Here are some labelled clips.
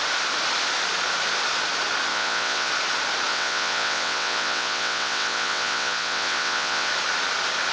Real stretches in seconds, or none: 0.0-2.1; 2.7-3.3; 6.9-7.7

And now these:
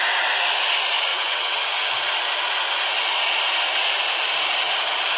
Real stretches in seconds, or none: 0.0-1.1; 1.6-5.2